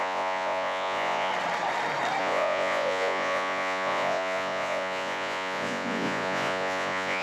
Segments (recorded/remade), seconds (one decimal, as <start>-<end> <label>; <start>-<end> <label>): 0.0-1.3 remade; 1.3-2.2 recorded; 2.2-7.2 remade